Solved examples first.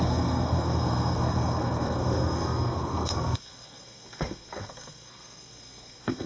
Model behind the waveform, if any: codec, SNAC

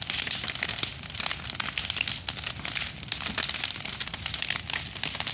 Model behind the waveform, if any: none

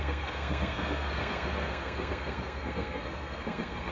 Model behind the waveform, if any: codec, SNAC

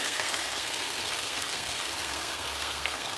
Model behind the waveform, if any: codec, SNAC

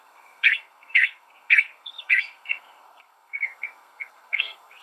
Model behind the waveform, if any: codec, SNAC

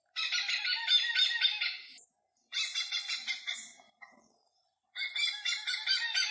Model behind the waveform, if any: none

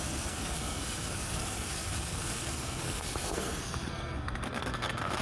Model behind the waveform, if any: codec, SNAC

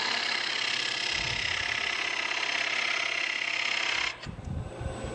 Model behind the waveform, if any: none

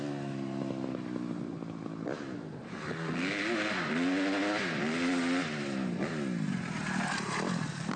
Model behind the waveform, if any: none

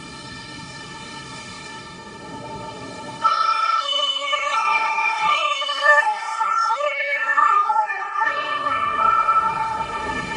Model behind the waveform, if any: codec, SNAC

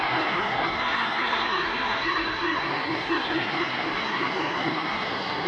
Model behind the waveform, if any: codec, SNAC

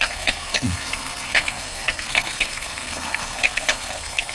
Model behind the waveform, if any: codec, SNAC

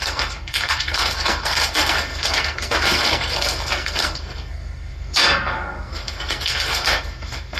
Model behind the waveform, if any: codec, SNAC